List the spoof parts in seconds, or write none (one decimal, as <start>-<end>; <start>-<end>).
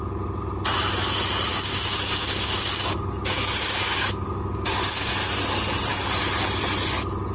1.5-5.1